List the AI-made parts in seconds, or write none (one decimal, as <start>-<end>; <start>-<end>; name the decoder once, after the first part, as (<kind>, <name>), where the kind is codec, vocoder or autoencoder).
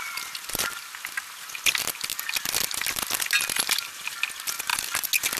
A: none